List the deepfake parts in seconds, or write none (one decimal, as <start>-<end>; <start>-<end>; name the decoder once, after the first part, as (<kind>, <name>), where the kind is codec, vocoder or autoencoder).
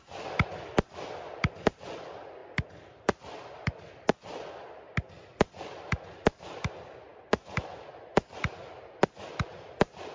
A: none